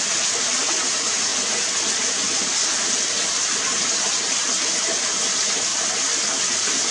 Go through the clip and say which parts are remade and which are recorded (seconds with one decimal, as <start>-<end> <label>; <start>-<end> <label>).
0.0-6.9 recorded